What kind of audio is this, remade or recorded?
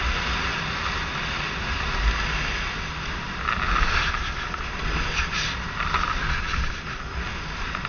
recorded